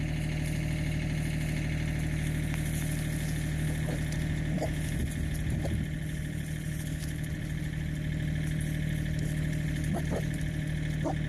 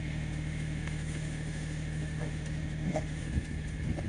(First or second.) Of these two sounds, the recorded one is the first